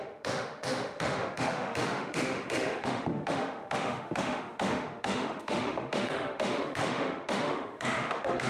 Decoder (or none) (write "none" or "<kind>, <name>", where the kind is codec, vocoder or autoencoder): autoencoder, DAC-VAE